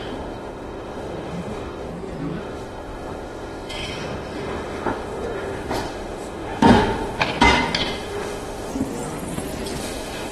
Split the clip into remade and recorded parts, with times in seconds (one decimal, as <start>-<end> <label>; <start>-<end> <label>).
0.0-1.9 remade; 1.9-2.4 recorded; 2.4-7.2 remade; 7.2-7.8 recorded; 7.8-8.7 remade; 8.7-9.8 recorded; 9.8-10.3 remade